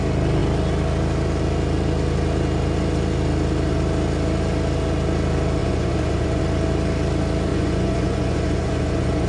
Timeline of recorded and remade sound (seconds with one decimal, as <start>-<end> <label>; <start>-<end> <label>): 0.0-5.6 recorded; 5.6-6.4 remade; 6.4-7.5 recorded; 7.5-9.3 remade